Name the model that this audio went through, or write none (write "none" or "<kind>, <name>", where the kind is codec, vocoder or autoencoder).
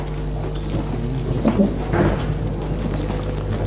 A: none